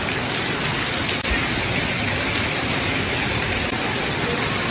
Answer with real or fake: real